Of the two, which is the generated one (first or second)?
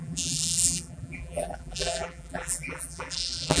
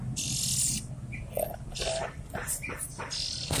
first